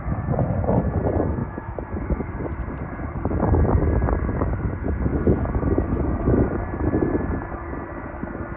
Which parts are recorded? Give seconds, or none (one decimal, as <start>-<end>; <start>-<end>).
1.4-2.3; 5.1-6.2